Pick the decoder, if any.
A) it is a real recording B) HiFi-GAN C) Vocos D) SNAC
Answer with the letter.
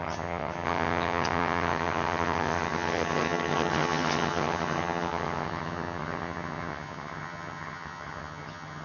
B